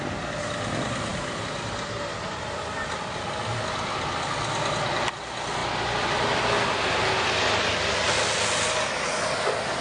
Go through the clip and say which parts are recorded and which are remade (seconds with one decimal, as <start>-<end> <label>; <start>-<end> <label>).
0.0-9.8 recorded